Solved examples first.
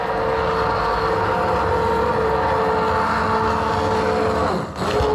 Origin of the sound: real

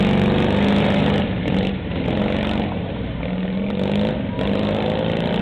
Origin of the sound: real